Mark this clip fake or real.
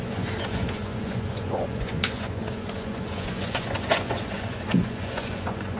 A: fake